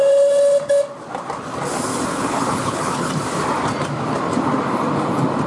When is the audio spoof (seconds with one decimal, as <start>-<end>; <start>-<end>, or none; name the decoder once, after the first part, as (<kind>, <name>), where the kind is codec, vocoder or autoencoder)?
2.1-3.1 (codec, HILCodec)